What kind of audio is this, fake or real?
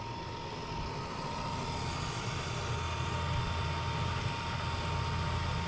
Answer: real